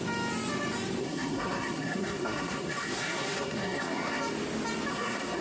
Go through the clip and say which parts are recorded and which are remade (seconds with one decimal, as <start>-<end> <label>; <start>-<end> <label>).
0.0-1.0 recorded; 1.0-4.2 remade; 4.2-4.9 recorded; 4.9-5.4 remade